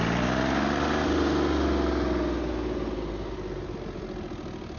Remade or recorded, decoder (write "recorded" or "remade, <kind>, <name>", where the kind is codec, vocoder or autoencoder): recorded